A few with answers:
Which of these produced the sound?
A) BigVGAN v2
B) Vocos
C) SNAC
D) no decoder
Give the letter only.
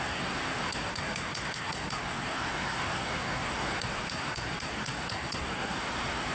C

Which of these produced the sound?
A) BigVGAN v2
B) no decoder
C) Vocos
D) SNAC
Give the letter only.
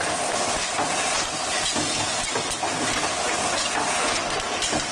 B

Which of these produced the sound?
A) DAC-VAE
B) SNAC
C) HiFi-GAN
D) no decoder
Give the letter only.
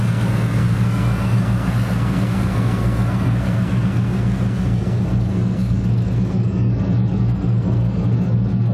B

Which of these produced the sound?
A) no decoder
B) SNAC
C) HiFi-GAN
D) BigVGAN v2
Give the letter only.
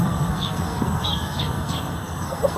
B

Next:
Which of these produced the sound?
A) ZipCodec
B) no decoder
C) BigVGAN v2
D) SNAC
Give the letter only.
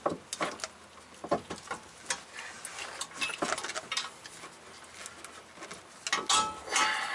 B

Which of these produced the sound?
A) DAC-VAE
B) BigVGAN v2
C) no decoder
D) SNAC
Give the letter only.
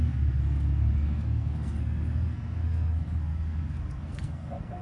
D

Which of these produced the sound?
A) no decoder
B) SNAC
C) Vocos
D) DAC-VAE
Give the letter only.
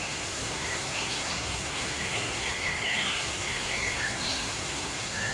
B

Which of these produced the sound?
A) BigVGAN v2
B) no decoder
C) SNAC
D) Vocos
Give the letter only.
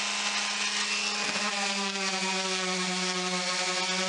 B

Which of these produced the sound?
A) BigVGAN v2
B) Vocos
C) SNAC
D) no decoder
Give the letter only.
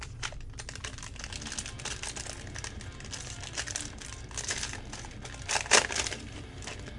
D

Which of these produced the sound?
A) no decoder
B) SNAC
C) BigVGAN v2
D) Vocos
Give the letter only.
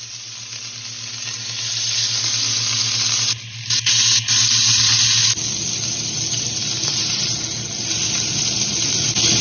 A